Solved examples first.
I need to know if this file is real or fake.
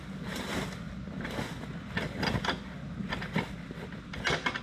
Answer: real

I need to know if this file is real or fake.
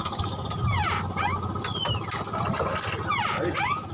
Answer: real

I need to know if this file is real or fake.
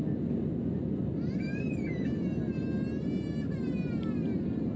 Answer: real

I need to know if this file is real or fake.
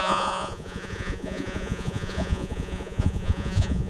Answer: fake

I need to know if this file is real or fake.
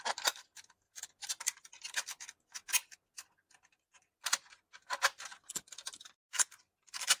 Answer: real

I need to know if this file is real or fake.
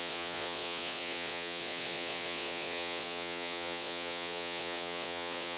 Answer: fake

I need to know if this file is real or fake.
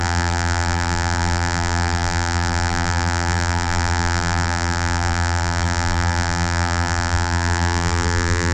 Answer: fake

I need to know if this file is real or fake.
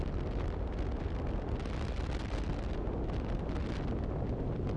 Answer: real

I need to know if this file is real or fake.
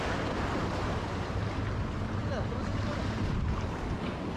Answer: real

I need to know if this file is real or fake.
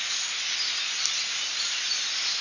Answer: real